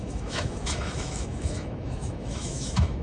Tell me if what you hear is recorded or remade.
remade